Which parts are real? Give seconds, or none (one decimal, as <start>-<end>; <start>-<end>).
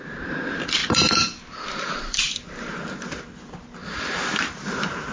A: 0.0-5.1